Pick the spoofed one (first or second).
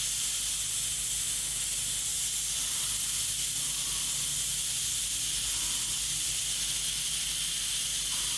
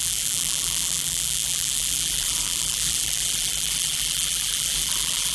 second